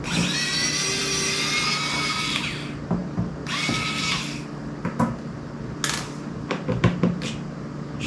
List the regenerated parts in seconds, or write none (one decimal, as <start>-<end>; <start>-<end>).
none